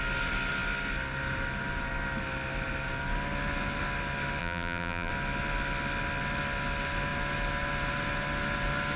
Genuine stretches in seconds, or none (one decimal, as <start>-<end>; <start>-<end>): 0.0-4.4; 5.1-9.0